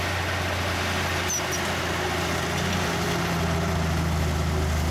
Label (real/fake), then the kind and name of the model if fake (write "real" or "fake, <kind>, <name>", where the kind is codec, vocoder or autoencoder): real